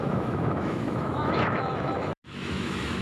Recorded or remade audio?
remade